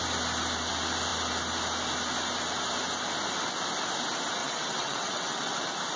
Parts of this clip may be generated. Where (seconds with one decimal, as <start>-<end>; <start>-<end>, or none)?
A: 4.4-5.6